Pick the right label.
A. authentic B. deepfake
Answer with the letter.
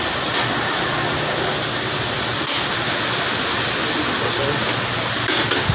A